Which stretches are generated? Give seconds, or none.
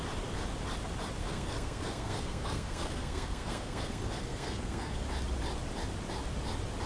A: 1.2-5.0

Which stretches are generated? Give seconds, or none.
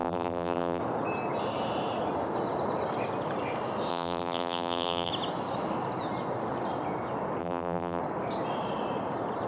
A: 0.0-0.8; 3.9-5.1; 7.4-8.0